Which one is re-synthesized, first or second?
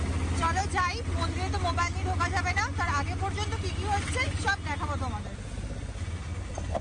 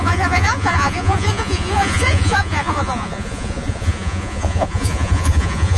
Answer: second